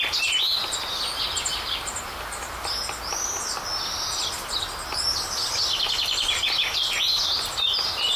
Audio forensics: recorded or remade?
recorded